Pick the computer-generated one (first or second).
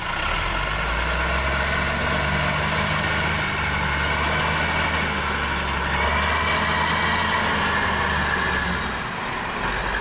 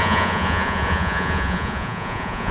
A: second